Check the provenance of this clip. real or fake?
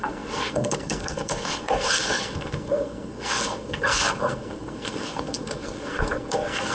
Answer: fake